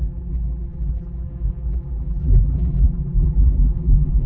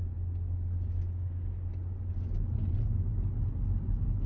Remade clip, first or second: first